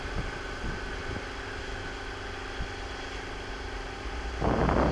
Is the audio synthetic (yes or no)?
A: no